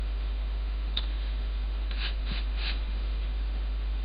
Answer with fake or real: fake